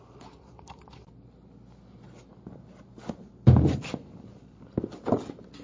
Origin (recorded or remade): recorded